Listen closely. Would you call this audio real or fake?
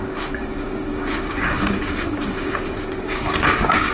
fake